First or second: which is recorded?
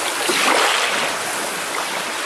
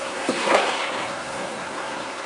first